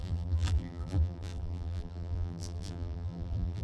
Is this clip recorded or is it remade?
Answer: remade